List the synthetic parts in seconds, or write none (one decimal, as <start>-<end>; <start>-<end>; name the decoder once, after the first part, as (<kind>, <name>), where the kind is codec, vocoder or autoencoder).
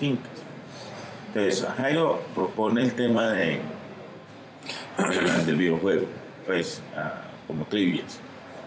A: 0.0-3.4 (vocoder, Vocos); 5.0-8.7